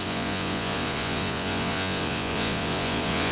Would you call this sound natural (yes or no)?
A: no